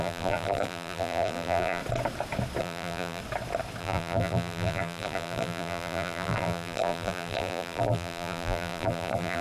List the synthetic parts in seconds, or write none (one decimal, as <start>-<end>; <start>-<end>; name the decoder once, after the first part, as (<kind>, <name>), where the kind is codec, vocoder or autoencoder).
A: 0.0-1.8 (vocoder, BigVGAN v2); 2.6-3.2; 3.8-9.4